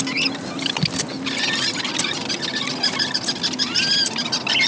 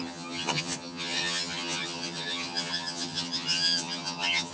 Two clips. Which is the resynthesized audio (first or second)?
second